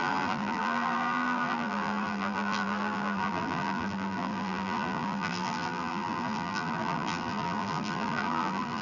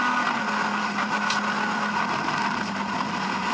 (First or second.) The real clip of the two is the second